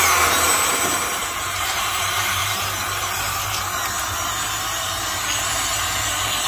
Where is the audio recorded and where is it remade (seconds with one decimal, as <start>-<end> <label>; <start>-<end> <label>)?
0.0-2.4 remade; 2.4-6.5 recorded